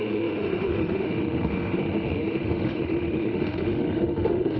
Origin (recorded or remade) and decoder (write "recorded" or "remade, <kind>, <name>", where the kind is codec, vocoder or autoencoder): remade, autoencoder, DAC-VAE